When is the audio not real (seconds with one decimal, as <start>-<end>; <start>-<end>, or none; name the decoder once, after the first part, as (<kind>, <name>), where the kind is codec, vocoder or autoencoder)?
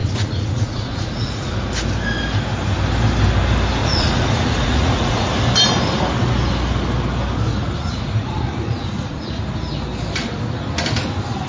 0.0-1.5 (vocoder, Vocos); 3.8-5.3; 7.5-9.4